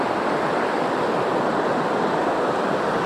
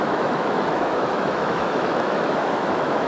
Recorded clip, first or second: first